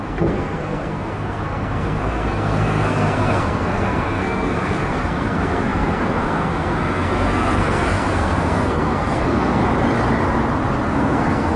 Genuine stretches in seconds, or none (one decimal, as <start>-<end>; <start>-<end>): 9.6-10.9